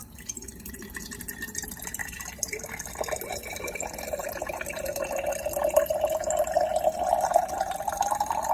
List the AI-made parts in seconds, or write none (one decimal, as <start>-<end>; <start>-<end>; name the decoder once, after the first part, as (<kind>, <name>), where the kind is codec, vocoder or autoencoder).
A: none

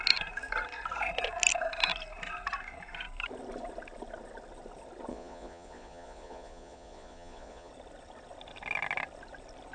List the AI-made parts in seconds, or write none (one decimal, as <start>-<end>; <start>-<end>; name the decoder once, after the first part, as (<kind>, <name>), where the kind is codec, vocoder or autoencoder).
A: 5.1-7.7 (vocoder, Vocos)